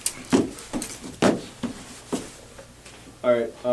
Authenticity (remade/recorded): recorded